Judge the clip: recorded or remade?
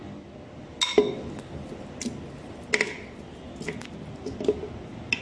recorded